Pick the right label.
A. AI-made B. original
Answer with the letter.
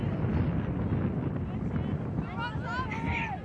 B